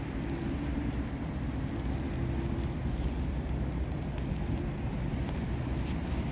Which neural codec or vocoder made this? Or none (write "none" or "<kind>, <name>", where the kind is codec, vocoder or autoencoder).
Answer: none